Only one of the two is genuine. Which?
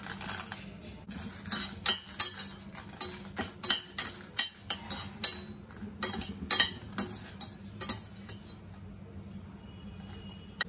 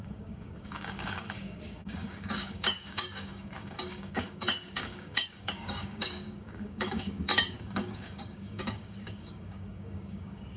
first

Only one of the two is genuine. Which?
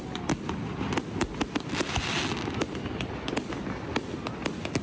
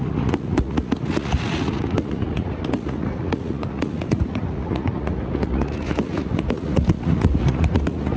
first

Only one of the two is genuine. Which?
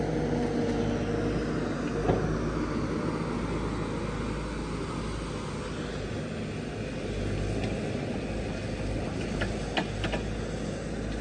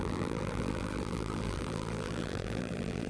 first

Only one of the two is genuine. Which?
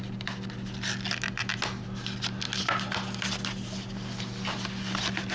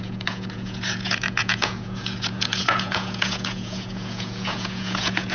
first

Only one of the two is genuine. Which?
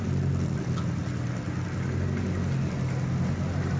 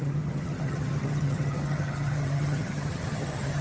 first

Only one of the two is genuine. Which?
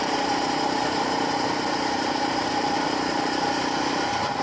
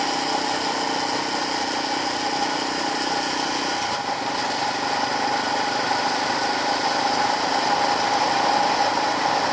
second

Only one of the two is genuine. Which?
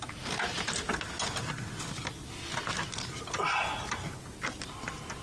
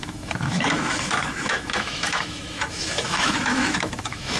first